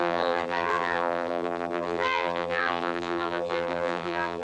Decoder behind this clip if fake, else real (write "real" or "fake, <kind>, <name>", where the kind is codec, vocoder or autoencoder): fake, vocoder, BigVGAN v2